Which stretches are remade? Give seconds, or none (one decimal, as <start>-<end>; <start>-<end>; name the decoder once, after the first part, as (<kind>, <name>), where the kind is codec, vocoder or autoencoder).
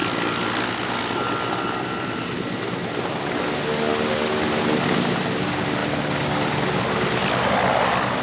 none